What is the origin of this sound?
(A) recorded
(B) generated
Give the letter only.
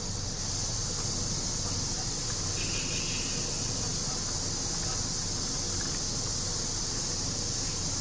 A